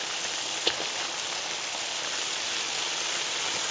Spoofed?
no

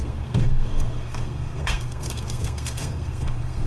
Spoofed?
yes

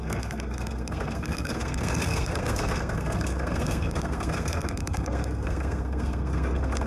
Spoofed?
yes